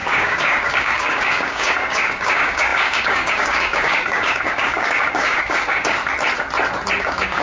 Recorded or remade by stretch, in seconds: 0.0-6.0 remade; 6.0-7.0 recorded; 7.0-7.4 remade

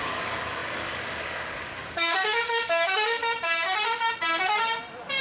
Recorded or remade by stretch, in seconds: 0.0-3.2 remade; 3.2-5.2 recorded

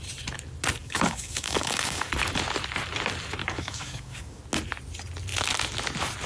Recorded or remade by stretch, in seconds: 0.0-0.8 recorded; 0.8-2.1 remade; 2.1-3.4 recorded; 3.4-4.4 remade; 4.4-6.3 recorded

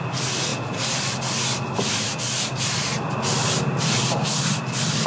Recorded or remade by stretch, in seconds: 0.0-5.1 recorded

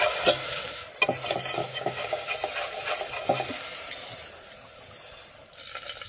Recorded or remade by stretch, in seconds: 0.0-1.6 recorded; 1.6-2.3 remade; 2.3-6.1 recorded

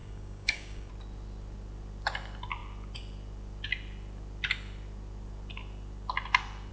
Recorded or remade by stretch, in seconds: 0.0-0.9 remade; 0.9-6.7 recorded